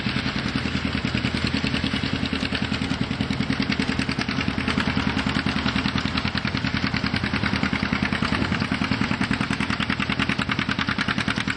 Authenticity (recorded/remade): recorded